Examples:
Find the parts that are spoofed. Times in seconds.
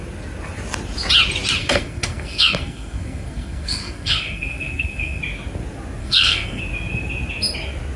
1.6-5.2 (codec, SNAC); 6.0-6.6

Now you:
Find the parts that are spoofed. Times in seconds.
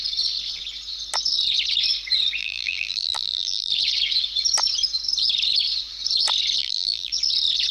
2.4-3.7 (vocoder, BigVGAN v2); 6.6-7.1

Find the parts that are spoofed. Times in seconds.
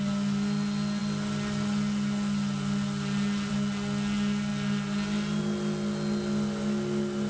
none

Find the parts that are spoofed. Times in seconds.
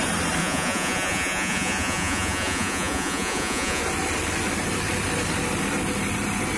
0.4-3.8 (vocoder, Vocos)